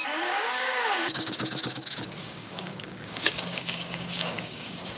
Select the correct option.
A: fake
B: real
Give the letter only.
A